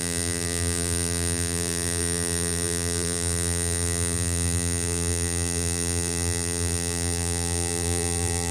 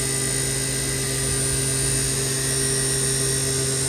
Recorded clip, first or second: second